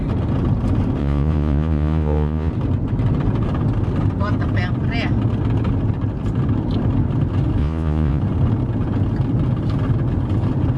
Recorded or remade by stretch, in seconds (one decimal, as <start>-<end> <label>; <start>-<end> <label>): 0.0-1.0 recorded; 1.0-2.5 remade; 2.5-7.6 recorded; 7.6-8.2 remade; 8.2-10.8 recorded